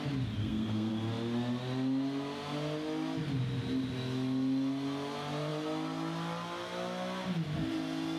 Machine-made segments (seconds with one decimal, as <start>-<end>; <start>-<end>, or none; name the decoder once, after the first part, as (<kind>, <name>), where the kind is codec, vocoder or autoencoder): 0.4-0.9 (codec, SNAC)